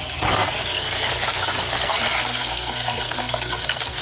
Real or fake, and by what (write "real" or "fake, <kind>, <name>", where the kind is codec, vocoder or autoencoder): fake, codec, SNAC